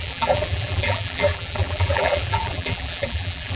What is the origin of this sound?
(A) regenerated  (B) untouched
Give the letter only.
A